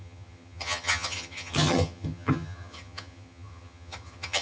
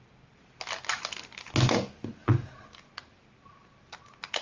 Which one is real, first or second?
second